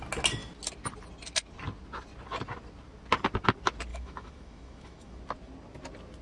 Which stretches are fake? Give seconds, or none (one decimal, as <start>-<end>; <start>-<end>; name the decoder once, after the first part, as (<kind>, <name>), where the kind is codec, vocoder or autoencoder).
3.9-5.2 (autoencoder, DAC-VAE)

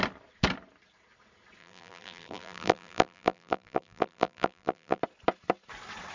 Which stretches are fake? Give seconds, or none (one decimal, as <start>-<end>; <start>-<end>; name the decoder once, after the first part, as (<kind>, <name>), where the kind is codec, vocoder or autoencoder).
1.6-5.0 (vocoder, BigVGAN v2)

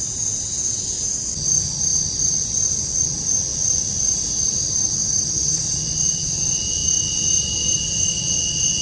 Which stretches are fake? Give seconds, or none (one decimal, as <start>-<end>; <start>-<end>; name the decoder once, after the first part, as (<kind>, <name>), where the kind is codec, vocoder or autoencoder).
5.0-5.8 (vocoder, BigVGAN v2)

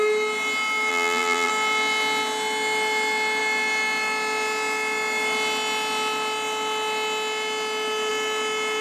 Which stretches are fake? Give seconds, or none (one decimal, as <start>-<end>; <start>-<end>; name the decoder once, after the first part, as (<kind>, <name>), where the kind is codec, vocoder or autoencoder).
0.9-1.5 (vocoder, BigVGAN v2)

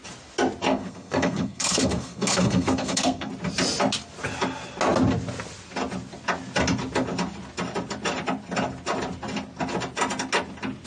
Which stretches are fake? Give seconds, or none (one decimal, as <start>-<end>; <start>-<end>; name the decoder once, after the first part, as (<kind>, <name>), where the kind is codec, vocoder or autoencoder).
0.7-3.3 (codec, SNAC)

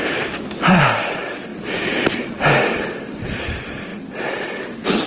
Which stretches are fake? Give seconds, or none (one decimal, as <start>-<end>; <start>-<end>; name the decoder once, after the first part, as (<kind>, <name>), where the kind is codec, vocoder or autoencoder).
none